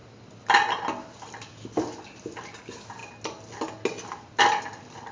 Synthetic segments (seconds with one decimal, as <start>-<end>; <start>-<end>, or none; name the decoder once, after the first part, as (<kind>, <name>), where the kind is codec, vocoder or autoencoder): none